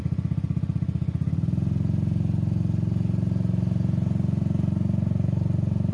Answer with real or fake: real